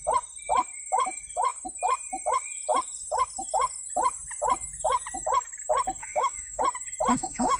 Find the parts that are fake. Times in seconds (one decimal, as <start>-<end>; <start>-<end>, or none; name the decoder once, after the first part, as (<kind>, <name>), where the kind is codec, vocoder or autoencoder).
6.0-6.6 (autoencoder, DAC-VAE); 7.1-7.6